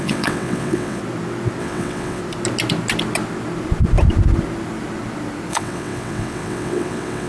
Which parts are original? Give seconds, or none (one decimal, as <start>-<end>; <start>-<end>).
1.0-1.6; 2.2-5.5